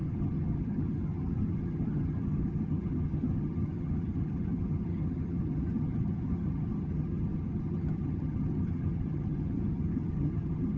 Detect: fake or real fake